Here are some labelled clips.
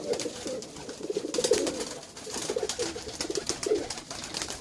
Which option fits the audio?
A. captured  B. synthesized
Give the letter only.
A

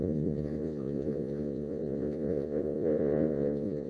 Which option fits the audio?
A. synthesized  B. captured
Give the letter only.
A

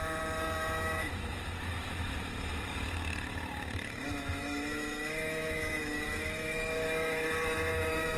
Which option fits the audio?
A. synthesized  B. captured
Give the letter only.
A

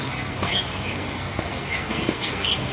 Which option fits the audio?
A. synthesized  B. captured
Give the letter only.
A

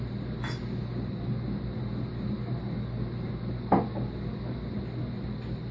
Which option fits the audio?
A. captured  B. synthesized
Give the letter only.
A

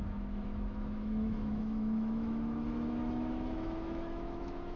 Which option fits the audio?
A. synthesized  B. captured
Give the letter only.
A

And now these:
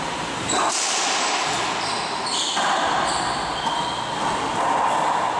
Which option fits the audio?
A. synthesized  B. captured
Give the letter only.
B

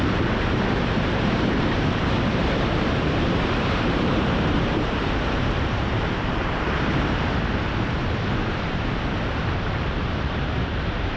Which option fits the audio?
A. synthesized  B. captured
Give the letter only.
A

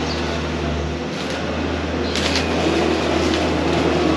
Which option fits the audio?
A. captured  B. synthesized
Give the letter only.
A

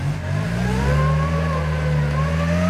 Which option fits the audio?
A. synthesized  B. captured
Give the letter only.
B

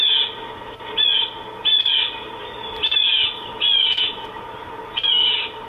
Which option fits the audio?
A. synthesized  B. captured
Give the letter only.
B